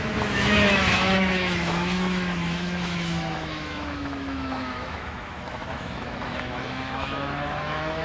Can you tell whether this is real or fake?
fake